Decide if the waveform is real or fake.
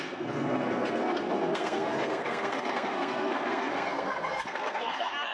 fake